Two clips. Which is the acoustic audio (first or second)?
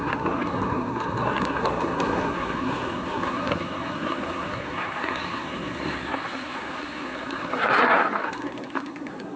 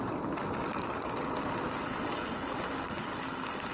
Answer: second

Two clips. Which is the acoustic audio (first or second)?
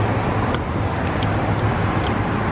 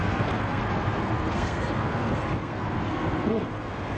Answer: first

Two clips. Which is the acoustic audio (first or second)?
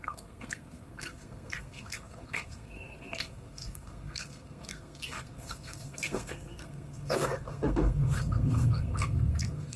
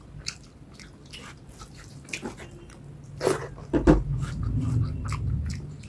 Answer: second